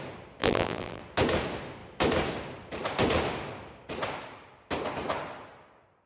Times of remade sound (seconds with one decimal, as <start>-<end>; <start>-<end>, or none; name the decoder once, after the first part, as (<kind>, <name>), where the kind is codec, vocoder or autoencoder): 0.4-1.0 (vocoder, BigVGAN v2)